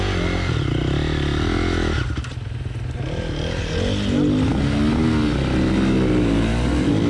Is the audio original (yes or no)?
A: yes